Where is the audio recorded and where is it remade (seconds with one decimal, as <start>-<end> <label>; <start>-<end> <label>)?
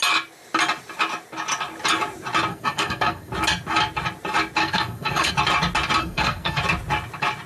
0.0-2.5 recorded; 2.5-3.3 remade; 3.3-4.6 recorded; 4.6-5.3 remade; 5.3-6.0 recorded; 6.0-6.6 remade; 6.6-7.5 recorded